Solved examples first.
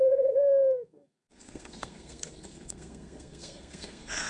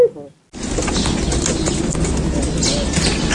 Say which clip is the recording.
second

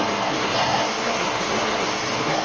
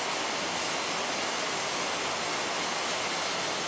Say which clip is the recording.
second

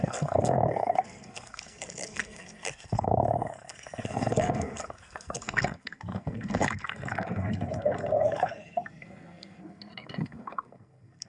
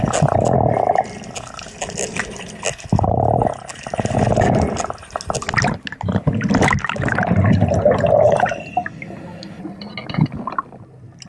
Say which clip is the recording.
second